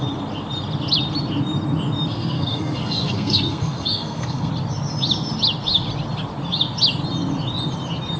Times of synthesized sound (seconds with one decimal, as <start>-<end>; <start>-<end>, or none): 2.1-4.5